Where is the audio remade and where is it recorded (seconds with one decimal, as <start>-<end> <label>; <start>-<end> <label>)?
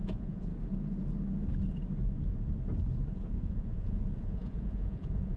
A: 0.0-0.5 remade; 0.5-3.1 recorded; 3.1-5.4 remade